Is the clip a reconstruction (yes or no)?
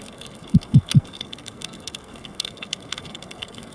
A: yes